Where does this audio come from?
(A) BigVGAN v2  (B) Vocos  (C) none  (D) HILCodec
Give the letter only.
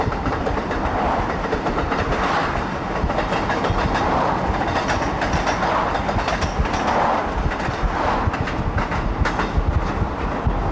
C